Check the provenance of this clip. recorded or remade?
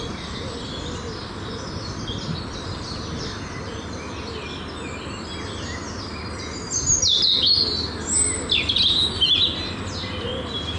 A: recorded